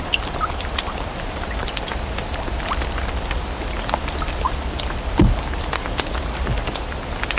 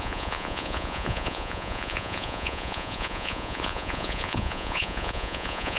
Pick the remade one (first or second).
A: second